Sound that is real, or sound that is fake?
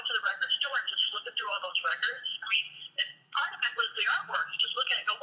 fake